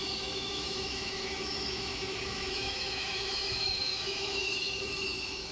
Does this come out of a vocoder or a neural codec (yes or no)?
yes